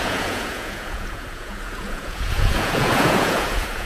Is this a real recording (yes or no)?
no